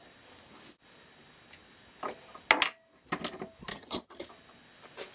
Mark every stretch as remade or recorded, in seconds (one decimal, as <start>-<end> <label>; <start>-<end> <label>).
0.0-3.7 recorded; 3.7-4.3 remade; 4.3-5.1 recorded